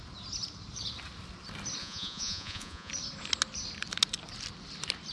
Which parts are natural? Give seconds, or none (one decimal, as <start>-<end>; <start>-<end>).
0.0-1.8; 2.9-5.1